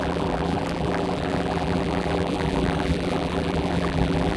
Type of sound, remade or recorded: remade